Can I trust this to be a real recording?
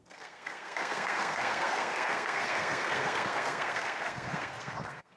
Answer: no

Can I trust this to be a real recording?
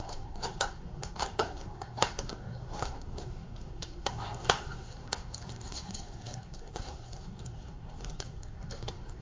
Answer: no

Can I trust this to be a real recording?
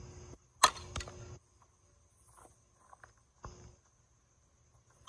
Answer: yes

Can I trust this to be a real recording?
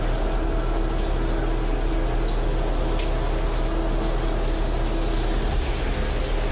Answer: yes